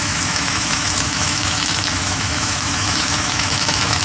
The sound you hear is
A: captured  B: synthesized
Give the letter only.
B